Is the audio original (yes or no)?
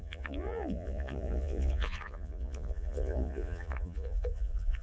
no